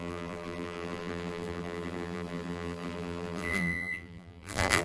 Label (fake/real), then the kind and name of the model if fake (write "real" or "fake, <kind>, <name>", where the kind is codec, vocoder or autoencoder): fake, vocoder, BigVGAN v2